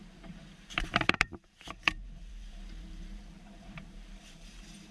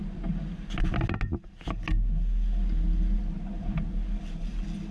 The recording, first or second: second